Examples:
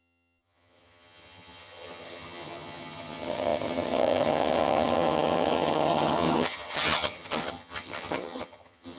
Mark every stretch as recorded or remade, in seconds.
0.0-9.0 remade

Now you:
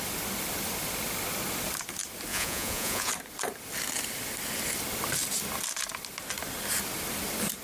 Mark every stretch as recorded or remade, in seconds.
0.0-2.3 recorded; 2.3-3.1 remade; 3.1-7.6 recorded

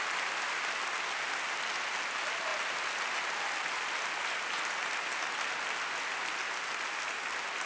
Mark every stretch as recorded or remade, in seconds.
0.0-7.7 recorded

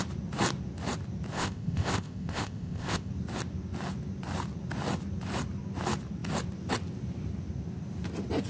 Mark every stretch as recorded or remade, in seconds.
0.0-1.3 recorded; 1.3-3.1 remade; 3.1-8.5 recorded

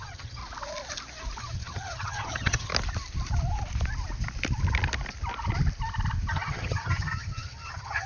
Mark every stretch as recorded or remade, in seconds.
0.0-0.4 remade; 0.4-1.4 recorded; 1.4-2.7 remade; 2.7-6.3 recorded; 6.3-8.1 remade

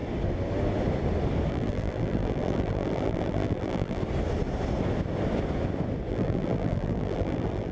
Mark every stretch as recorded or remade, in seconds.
0.0-1.5 recorded; 1.5-4.0 remade; 4.0-6.1 recorded; 6.1-7.7 remade

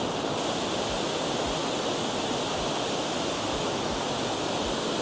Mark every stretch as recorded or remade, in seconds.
0.0-5.0 recorded

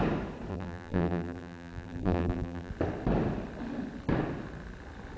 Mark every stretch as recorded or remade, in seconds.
0.0-0.5 recorded; 0.5-2.7 remade; 2.7-5.2 recorded